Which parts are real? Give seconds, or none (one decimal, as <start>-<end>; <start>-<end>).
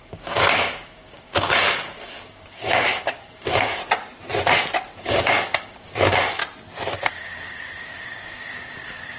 3.8-5.0; 6.4-7.1